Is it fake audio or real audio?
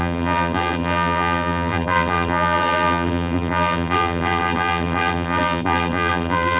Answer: fake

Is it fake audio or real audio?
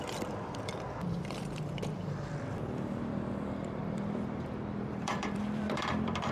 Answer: fake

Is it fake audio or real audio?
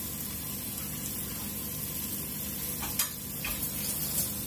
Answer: real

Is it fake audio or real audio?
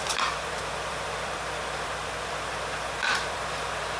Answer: fake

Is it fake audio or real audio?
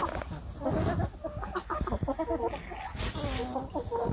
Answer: real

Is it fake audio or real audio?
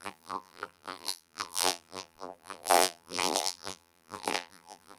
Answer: fake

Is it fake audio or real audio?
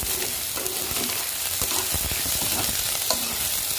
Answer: real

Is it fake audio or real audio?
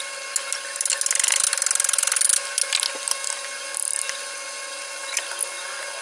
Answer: real